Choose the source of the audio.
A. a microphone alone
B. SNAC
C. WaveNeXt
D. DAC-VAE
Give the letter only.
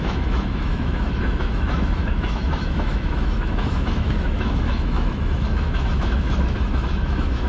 D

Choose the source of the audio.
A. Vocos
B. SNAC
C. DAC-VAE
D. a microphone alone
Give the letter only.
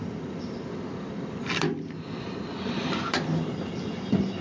D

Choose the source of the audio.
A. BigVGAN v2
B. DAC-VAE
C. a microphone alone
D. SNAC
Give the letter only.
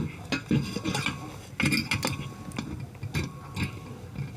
C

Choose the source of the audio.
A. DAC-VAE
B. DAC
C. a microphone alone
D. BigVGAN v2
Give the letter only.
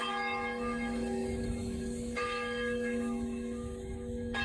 A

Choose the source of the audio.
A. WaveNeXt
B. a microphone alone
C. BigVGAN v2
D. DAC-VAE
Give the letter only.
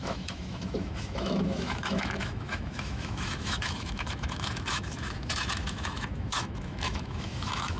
D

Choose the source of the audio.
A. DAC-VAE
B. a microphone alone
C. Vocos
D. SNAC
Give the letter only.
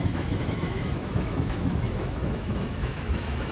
A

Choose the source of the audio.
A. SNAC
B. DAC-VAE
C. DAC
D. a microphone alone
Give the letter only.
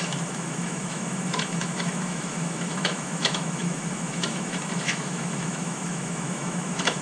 B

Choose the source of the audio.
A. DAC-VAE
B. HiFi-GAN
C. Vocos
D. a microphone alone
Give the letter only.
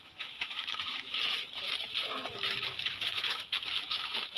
A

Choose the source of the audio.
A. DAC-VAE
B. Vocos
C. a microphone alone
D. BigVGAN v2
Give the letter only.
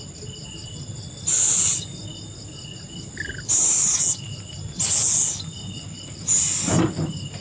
C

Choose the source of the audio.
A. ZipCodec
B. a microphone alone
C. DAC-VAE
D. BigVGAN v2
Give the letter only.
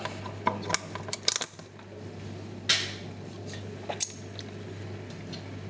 B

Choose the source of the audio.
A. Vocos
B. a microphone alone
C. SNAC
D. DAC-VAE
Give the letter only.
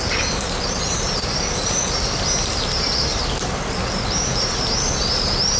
B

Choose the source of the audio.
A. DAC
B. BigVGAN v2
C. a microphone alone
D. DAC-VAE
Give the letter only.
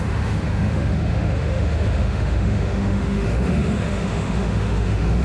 D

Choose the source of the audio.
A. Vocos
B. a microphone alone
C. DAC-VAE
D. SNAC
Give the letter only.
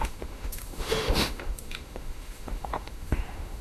C